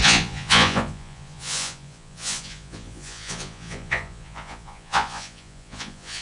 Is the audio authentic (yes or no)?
no